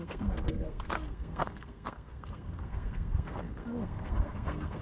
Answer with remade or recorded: remade